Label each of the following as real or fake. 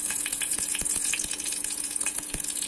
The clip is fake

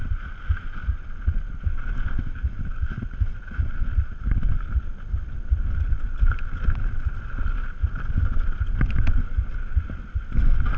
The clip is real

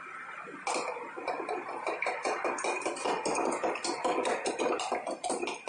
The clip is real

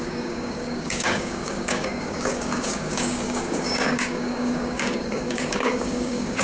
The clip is fake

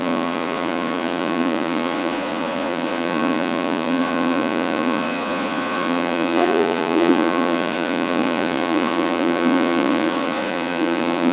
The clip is fake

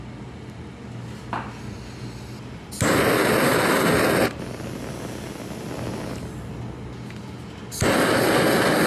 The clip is real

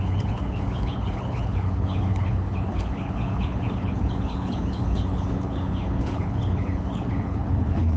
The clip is fake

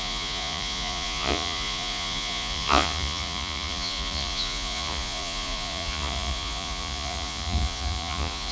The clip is fake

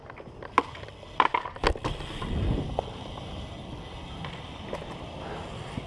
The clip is real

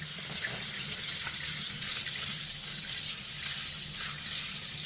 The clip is real